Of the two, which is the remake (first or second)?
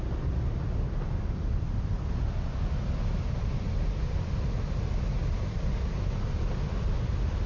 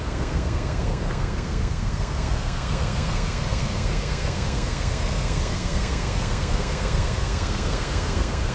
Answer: second